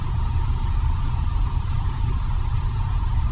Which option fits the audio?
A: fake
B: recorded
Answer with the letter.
A